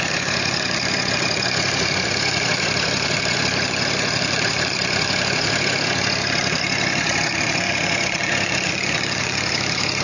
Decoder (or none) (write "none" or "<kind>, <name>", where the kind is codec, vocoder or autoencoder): vocoder, Vocos